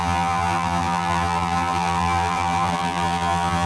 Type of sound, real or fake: fake